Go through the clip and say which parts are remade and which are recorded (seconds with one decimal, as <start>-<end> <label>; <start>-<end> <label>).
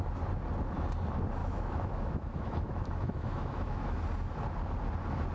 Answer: 0.0-1.4 recorded; 1.4-4.0 remade; 4.0-5.3 recorded